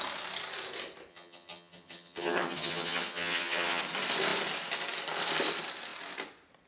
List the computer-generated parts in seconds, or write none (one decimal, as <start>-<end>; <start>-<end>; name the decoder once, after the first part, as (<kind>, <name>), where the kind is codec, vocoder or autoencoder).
1.1-3.8 (vocoder, HiFi-GAN)